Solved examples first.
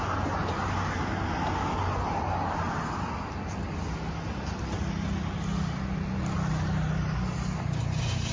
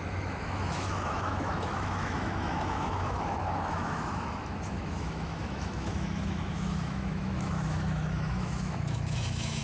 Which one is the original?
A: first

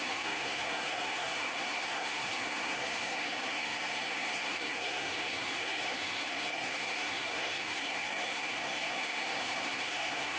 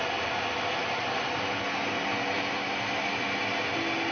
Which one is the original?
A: second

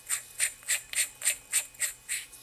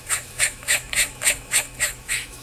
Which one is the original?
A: first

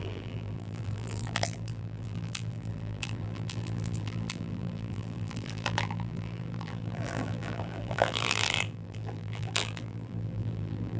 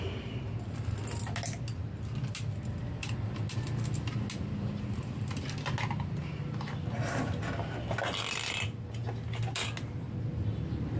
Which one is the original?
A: second